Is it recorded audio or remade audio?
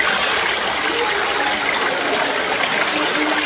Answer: recorded